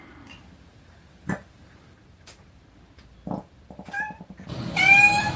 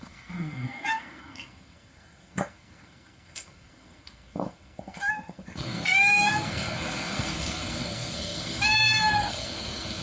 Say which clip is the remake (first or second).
second